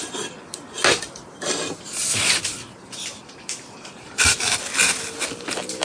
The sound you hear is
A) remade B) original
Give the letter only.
B